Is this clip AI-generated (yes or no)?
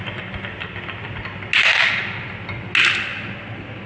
no